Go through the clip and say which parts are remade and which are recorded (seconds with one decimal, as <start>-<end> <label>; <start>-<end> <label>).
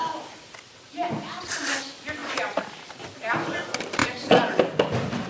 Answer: 0.0-5.3 remade